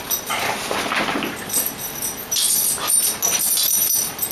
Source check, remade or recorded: recorded